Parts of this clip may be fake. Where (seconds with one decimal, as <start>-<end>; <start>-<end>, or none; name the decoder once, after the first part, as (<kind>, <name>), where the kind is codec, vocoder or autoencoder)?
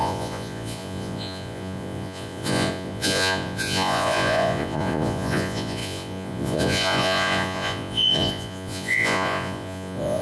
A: 0.0-10.2 (vocoder, Vocos)